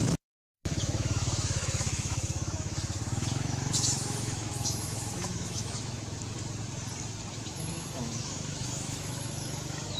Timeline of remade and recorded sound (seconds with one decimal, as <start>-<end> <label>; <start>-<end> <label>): 0.0-6.2 remade; 6.2-7.3 recorded; 7.3-10.0 remade